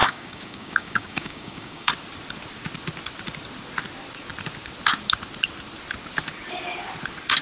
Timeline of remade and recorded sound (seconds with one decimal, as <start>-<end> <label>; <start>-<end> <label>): 0.0-1.9 remade; 1.9-7.4 recorded